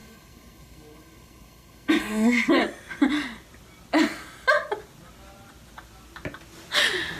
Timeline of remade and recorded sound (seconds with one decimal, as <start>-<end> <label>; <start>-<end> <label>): 0.0-2.6 remade; 2.6-7.2 recorded